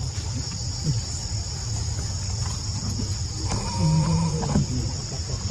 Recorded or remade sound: recorded